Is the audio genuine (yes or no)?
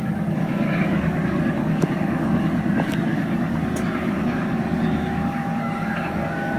no